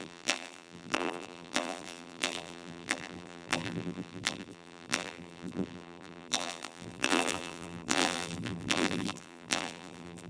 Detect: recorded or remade remade